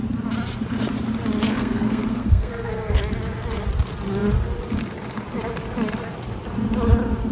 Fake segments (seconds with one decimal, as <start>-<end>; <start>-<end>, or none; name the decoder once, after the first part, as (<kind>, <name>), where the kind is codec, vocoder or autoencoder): 1.5-3.0 (codec, SNAC)